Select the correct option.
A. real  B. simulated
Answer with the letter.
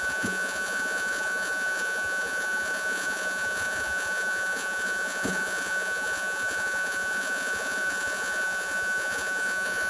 B